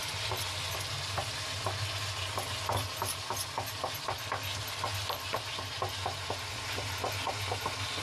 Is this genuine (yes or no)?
yes